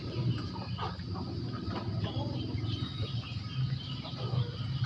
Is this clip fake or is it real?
real